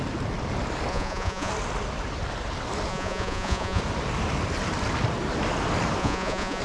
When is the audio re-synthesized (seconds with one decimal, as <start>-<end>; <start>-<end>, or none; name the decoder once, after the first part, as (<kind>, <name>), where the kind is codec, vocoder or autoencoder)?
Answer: 0.9-1.5 (vocoder, Vocos); 2.9-3.8; 6.0-6.6